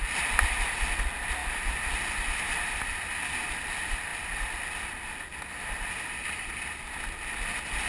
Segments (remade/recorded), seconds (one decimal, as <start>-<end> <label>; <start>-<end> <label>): 0.0-7.9 recorded